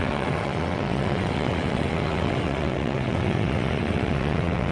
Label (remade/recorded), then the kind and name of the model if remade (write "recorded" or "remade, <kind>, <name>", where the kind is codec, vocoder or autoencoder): remade, vocoder, WaveNeXt